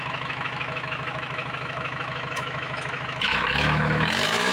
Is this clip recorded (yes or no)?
no